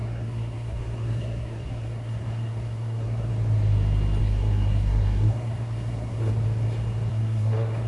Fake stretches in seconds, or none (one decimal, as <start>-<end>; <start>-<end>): 0.0-3.3; 4.2-6.3; 7.1-7.9